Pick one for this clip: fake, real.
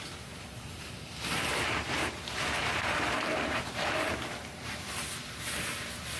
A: fake